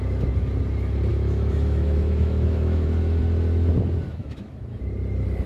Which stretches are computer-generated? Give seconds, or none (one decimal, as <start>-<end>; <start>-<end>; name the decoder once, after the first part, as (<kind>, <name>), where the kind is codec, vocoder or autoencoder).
1.1-3.2 (autoencoder, DAC-VAE); 4.1-4.8